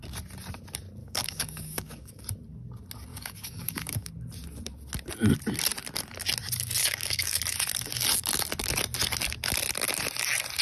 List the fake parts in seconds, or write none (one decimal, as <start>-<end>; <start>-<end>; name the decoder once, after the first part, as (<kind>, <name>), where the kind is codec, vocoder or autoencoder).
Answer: 1.0-2.2 (codec, DAC); 3.1-4.1; 6.8-7.4